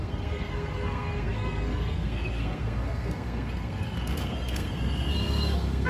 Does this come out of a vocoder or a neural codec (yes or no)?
yes